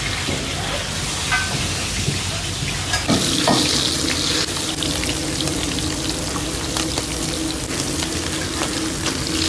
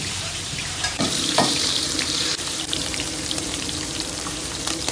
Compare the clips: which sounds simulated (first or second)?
second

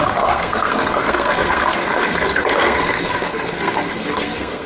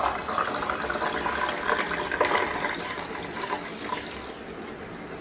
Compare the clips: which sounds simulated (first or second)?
first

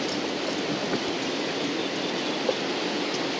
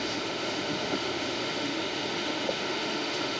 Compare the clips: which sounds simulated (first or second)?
second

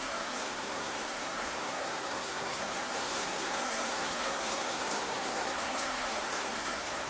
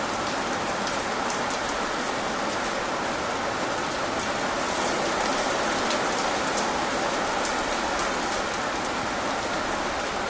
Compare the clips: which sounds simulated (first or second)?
first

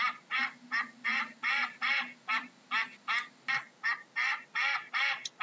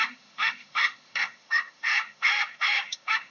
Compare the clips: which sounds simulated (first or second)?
second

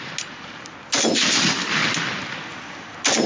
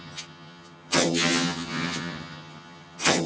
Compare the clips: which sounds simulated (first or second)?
second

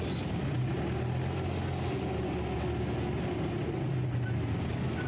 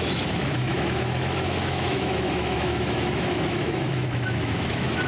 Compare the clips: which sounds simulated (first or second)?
second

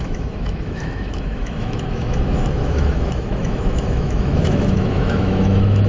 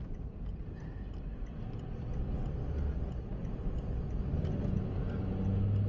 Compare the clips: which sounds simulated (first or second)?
first